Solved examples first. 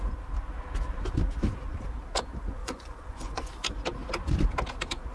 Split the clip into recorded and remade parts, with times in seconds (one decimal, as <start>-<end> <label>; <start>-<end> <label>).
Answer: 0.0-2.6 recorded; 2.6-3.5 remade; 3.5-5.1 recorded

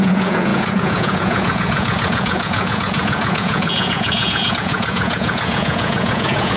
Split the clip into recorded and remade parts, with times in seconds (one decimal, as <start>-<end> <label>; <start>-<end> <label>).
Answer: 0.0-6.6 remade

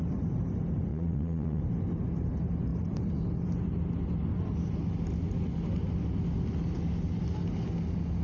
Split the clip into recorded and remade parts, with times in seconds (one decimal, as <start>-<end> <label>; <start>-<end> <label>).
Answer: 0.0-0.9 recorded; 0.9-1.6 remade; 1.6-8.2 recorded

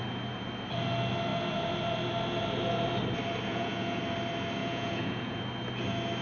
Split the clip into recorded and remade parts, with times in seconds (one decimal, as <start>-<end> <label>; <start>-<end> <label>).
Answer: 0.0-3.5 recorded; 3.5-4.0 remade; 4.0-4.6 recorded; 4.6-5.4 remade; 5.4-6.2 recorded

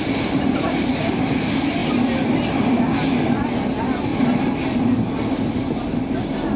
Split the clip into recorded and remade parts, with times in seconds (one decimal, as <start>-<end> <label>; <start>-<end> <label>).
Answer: 0.0-6.6 recorded

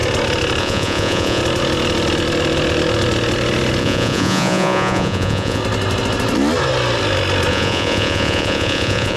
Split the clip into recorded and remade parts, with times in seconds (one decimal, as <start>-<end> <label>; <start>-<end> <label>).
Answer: 0.0-0.6 recorded; 0.6-1.4 remade; 1.4-3.8 recorded; 3.8-5.6 remade; 5.6-7.5 recorded; 7.5-9.2 remade

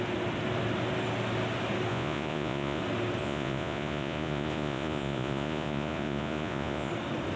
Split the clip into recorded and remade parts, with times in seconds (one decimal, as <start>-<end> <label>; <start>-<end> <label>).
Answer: 0.0-1.9 recorded; 1.9-2.8 remade; 2.8-3.2 recorded; 3.2-6.9 remade; 6.9-7.4 recorded

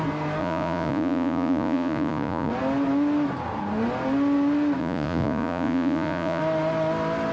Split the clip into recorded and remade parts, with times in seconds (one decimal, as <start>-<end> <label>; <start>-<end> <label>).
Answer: 0.0-0.4 recorded; 0.4-2.5 remade; 2.5-4.8 recorded; 4.8-6.4 remade; 6.4-7.3 recorded